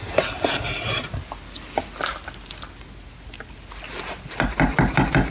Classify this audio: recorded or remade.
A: recorded